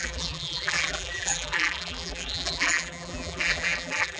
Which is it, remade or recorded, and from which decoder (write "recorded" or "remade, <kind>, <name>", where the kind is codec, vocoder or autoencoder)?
remade, vocoder, BigVGAN v2